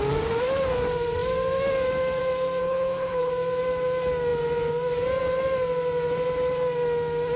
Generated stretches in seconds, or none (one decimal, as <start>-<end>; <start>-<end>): 2.6-3.3